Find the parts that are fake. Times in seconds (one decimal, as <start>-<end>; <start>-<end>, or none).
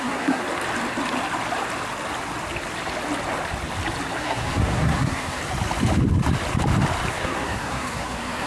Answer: 0.0-0.4; 4.2-5.4; 7.1-8.5